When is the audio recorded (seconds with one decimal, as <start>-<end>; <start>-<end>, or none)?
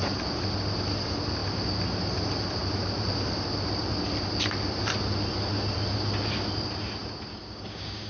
0.0-7.3